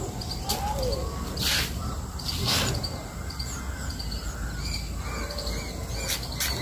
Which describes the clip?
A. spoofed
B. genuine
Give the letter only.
B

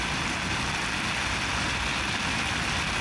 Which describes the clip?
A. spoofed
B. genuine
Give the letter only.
B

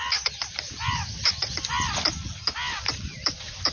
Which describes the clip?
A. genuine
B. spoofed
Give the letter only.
B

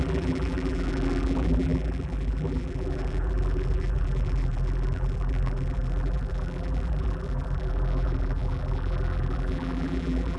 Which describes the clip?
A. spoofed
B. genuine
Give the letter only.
A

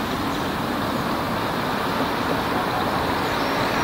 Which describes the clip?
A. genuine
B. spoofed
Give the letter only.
A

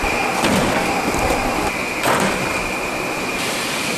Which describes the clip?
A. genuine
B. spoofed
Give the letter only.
A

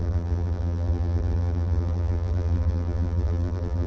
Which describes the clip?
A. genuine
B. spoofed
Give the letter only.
B